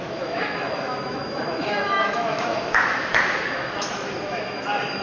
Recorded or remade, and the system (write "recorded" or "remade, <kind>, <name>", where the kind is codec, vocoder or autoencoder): remade, autoencoder, DAC-VAE